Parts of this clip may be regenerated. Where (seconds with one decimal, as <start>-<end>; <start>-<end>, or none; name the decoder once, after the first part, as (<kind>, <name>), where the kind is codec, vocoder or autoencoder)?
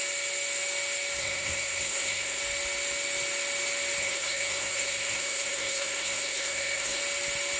1.2-2.4 (codec, SNAC); 4.0-7.0